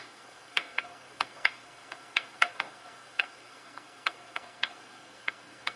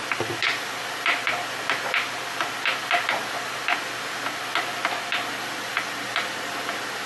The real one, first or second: second